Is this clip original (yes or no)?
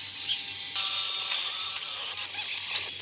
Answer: yes